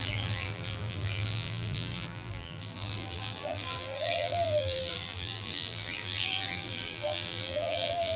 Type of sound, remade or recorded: remade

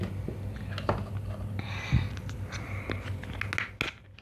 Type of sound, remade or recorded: recorded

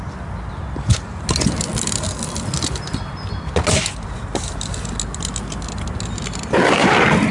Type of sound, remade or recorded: recorded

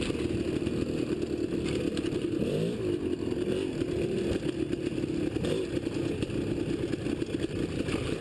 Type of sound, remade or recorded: recorded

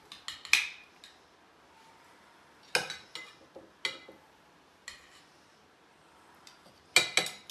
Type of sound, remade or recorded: recorded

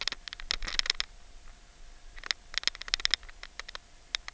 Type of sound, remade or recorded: recorded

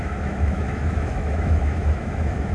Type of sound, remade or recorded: remade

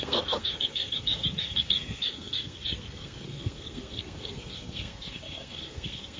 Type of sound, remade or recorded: remade